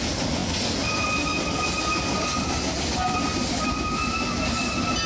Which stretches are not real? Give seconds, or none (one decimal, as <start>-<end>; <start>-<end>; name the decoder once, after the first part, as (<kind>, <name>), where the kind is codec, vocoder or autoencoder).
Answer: none